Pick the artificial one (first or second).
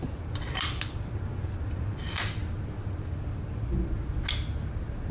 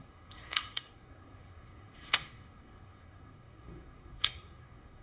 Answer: second